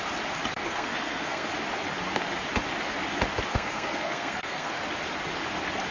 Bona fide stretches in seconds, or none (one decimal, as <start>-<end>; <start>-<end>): 0.0-0.5; 1.5-3.5; 4.8-5.9